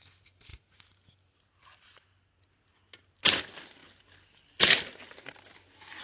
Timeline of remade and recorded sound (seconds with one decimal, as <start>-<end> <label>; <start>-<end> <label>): 0.0-6.0 recorded